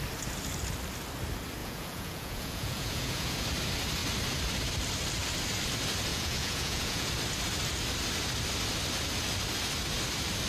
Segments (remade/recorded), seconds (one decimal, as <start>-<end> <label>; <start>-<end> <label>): 0.0-1.6 recorded; 1.6-3.4 remade; 3.4-6.1 recorded; 6.1-7.1 remade; 7.1-10.5 recorded